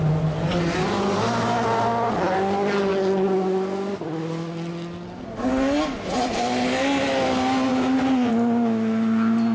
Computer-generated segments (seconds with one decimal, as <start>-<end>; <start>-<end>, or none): 7.7-8.3